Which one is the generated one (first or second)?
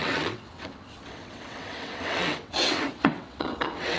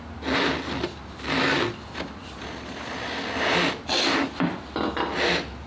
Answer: first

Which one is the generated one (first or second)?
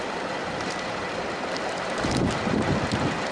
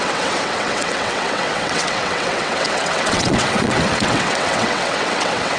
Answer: second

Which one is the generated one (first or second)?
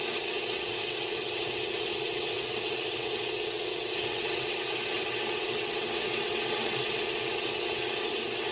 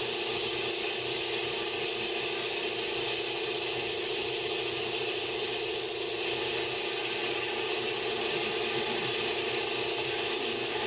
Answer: first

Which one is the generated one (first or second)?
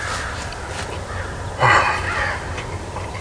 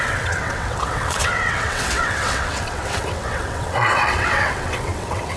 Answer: second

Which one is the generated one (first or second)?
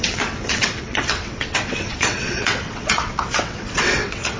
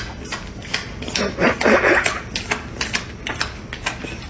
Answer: first